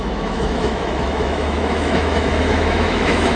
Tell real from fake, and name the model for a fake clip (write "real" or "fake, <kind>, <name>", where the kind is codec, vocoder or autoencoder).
fake, autoencoder, DAC-VAE